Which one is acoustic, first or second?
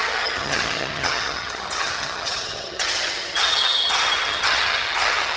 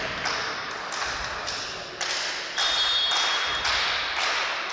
second